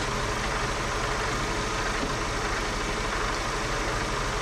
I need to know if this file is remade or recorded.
recorded